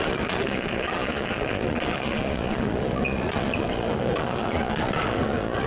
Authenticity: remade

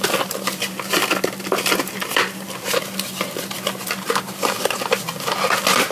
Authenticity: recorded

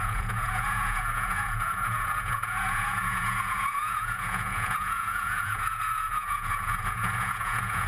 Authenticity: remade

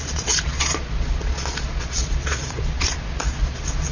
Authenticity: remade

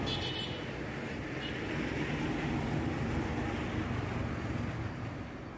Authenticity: recorded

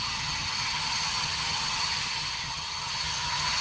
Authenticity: remade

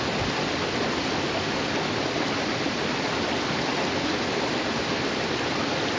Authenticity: recorded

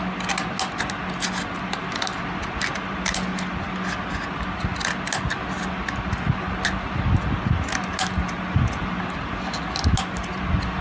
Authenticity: recorded